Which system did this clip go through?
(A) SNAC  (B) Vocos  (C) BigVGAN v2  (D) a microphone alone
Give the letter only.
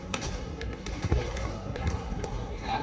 A